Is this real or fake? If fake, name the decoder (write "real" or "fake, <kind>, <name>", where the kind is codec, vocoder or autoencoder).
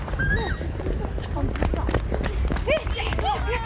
real